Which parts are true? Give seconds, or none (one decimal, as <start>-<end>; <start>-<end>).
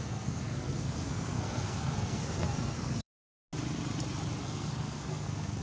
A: 3.1-4.4